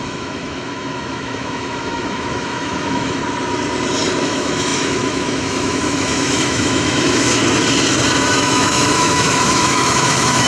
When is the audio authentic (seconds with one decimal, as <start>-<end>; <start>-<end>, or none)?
3.2-4.2; 7.4-8.3